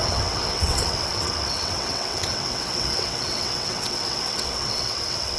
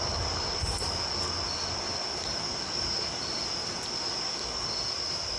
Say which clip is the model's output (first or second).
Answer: first